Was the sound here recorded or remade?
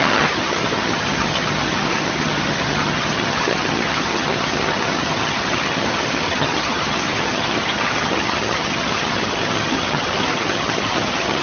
remade